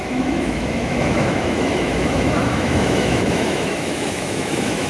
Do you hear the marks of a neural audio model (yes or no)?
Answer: yes